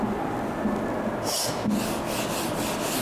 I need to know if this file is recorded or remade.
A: recorded